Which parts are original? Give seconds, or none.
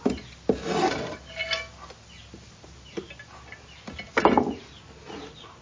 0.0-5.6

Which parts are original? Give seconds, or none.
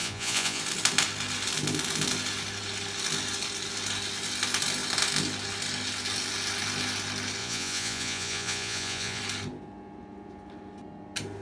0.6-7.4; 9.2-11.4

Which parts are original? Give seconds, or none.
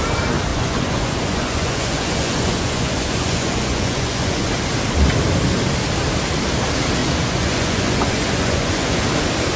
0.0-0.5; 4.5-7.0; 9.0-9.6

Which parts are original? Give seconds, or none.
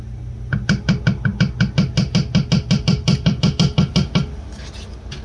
0.0-5.2